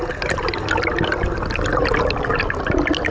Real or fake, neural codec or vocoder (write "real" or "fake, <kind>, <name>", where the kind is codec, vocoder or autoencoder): real